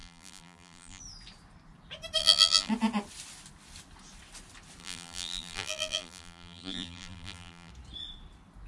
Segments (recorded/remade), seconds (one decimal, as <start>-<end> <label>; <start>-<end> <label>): 0.0-1.0 remade; 1.0-2.2 recorded; 2.2-2.7 remade; 2.7-4.8 recorded; 4.8-7.7 remade; 7.7-8.7 recorded